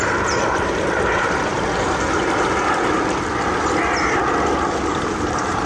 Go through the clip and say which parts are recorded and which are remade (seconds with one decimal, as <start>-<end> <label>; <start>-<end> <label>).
0.0-1.5 remade; 1.5-4.9 recorded; 4.9-5.7 remade